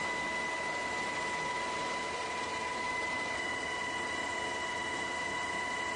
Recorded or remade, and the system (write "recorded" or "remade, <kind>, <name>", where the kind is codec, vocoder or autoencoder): recorded